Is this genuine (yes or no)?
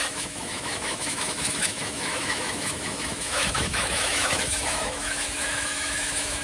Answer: no